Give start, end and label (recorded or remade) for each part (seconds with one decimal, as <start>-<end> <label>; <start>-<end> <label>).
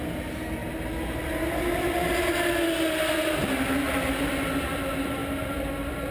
0.0-6.1 recorded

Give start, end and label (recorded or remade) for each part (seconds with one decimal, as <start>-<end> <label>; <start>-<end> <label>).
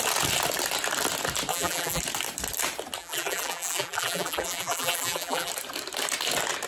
0.0-1.5 recorded; 1.5-2.0 remade; 2.0-3.0 recorded; 3.0-5.5 remade; 5.5-6.7 recorded